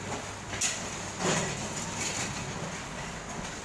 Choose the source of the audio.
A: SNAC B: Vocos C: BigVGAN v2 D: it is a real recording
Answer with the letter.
D